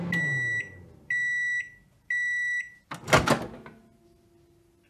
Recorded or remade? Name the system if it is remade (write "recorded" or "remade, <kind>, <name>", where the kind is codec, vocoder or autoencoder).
recorded